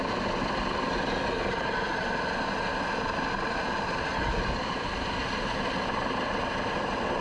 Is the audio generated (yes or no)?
no